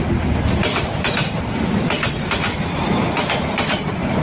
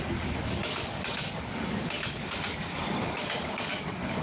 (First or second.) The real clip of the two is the first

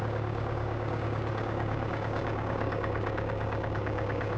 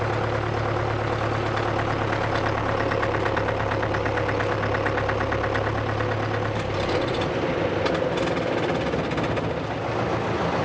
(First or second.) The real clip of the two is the second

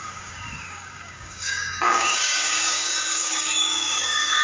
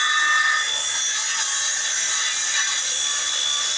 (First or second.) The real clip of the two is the second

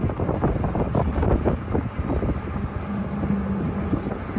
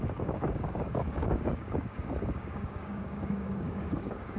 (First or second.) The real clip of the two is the first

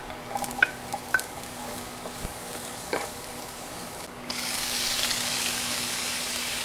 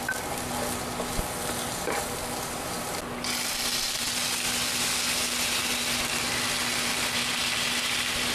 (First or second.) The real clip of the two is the second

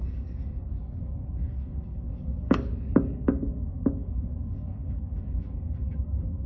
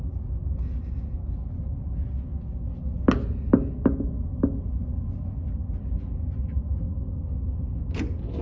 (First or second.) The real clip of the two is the second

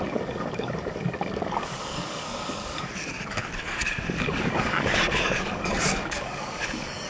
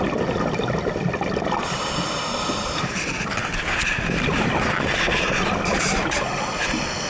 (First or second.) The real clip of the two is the second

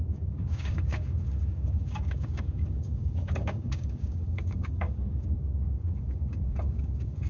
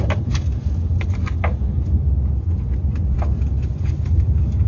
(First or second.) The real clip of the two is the second